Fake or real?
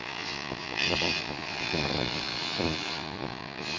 fake